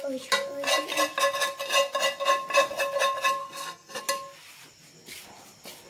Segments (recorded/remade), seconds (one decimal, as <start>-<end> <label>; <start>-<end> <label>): 0.0-3.4 recorded; 3.4-4.0 remade; 4.0-5.9 recorded